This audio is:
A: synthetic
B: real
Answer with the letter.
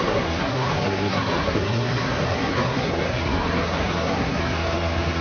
A